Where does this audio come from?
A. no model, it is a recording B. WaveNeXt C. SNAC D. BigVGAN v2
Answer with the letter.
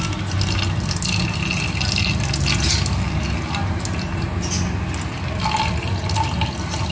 A